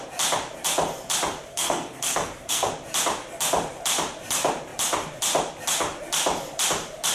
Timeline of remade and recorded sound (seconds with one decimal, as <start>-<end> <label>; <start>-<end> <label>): 0.0-1.5 recorded; 1.5-2.7 remade; 2.7-7.1 recorded